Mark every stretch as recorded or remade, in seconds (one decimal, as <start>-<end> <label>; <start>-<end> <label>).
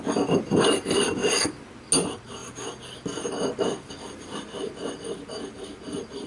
0.0-6.3 recorded